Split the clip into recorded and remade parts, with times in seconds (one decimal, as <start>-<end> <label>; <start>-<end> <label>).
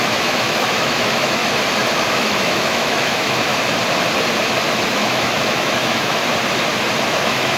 0.0-1.4 remade; 1.4-2.1 recorded; 2.1-3.5 remade; 3.5-4.9 recorded; 4.9-6.2 remade; 6.2-7.1 recorded; 7.1-7.6 remade